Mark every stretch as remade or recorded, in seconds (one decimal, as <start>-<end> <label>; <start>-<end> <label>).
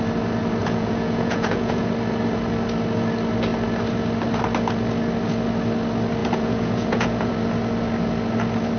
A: 0.0-0.6 recorded; 0.6-1.9 remade; 1.9-6.2 recorded; 6.2-7.3 remade; 7.3-8.8 recorded